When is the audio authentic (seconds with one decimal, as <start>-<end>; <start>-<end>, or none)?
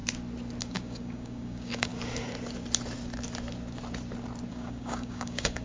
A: 0.0-0.6; 1.9-4.5